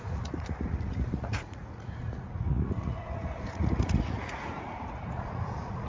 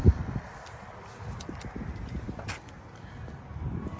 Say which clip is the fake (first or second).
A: first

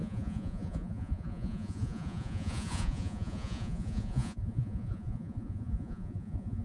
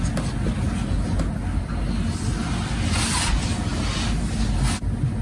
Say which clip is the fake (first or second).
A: first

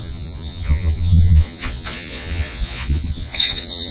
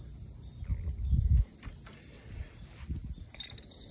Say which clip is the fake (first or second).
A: first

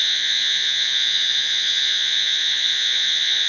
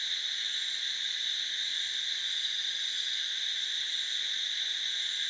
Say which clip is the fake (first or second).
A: first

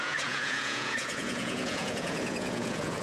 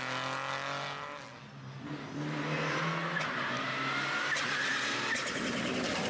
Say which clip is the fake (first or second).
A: first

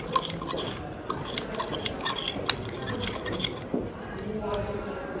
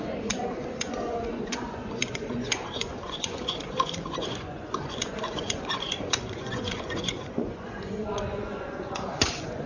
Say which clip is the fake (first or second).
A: second